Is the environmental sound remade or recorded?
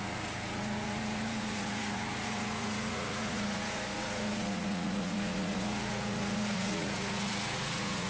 remade